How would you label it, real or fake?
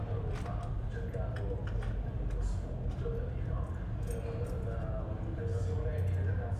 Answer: real